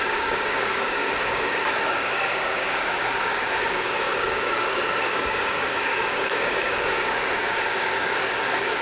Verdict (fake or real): fake